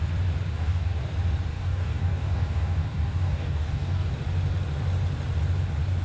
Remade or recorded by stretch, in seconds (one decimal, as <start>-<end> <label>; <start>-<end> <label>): 0.0-0.5 recorded; 0.5-1.0 remade; 1.0-1.5 recorded; 1.5-4.1 remade; 4.1-6.0 recorded